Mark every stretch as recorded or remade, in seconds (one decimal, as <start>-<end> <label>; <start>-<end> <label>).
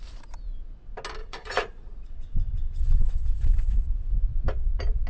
0.0-1.2 recorded; 1.2-4.3 remade; 4.3-5.1 recorded